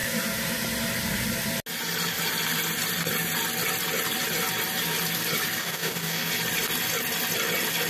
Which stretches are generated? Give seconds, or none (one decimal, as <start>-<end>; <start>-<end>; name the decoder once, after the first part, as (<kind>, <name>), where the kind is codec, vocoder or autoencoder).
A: 5.6-6.3 (codec, DAC)